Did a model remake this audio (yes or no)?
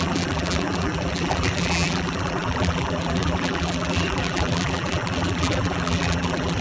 yes